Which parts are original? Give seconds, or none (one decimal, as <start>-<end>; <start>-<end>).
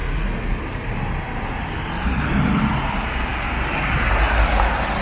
0.0-5.0